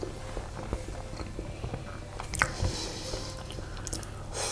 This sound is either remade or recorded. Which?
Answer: recorded